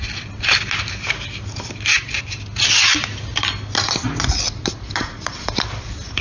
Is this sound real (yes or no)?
yes